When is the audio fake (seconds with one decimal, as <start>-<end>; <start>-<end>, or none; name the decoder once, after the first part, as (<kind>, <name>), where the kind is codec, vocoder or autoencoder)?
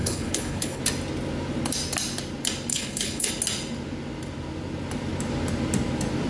0.0-0.8 (codec, HILCodec); 2.7-3.3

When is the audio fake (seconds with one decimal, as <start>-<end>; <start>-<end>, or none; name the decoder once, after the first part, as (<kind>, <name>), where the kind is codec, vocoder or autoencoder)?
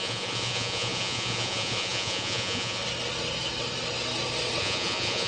0.0-2.8 (vocoder, Vocos); 4.6-5.3